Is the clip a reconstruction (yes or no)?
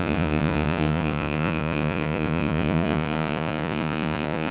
yes